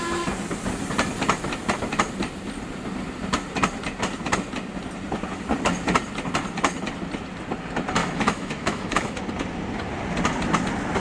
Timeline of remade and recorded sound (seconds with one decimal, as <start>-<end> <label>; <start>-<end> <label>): 0.0-8.0 recorded; 8.0-9.2 remade; 9.2-11.0 recorded